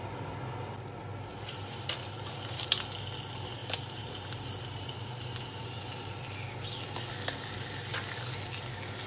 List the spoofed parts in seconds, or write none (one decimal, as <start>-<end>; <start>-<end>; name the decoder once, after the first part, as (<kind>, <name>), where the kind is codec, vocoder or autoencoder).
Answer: 1.3-2.7 (vocoder, BigVGAN v2); 3.6-5.8